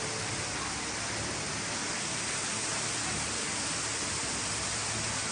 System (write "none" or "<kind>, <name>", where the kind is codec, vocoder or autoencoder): none